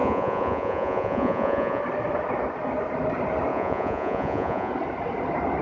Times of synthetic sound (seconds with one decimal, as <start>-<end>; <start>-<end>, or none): 0.0-1.8; 3.5-4.7